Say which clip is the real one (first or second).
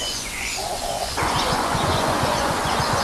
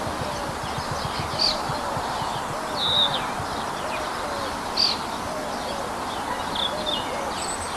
second